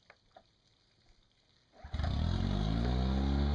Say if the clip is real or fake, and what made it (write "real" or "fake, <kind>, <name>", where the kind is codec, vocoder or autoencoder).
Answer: real